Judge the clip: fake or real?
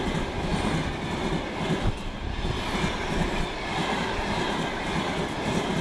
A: real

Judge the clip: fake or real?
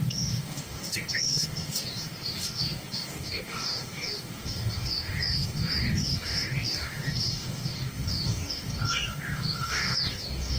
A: fake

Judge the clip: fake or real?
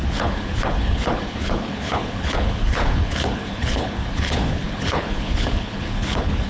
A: fake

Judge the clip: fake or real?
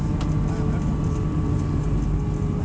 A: real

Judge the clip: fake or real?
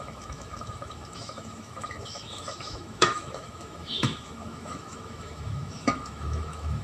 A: fake